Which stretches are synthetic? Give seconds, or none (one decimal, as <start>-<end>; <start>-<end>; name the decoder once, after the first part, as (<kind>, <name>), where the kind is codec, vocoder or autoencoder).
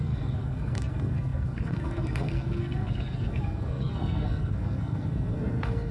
0.0-5.9 (codec, SNAC)